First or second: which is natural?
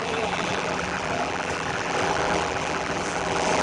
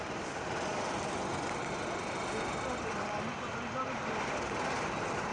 second